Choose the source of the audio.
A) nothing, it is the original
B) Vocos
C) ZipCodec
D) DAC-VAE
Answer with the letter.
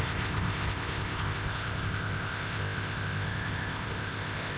C